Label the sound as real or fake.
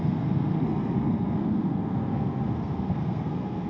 fake